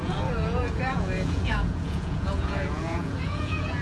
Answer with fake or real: fake